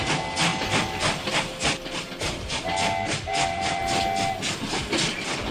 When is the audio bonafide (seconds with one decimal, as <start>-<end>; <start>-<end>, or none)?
0.0-0.5; 3.8-5.5